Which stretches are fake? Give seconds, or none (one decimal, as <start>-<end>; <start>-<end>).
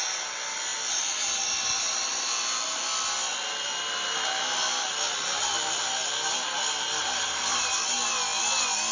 none